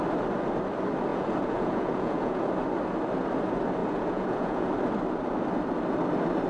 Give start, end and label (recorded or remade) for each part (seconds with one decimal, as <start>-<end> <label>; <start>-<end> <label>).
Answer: 0.0-1.1 recorded; 1.1-2.5 remade; 2.5-3.8 recorded; 3.8-4.7 remade; 4.7-6.5 recorded